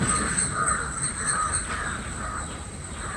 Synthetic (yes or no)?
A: no